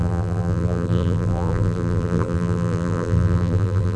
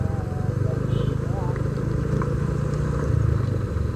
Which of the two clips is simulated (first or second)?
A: first